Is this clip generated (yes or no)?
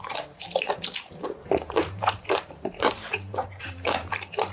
yes